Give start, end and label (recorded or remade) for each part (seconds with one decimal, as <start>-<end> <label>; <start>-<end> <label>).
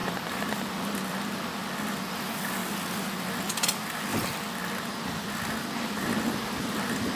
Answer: 0.0-2.6 recorded; 2.6-3.5 remade; 3.5-7.2 recorded